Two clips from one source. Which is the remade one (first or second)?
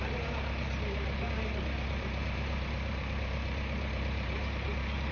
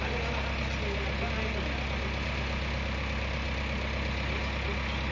first